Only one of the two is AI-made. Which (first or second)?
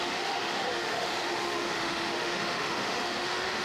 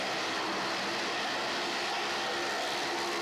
first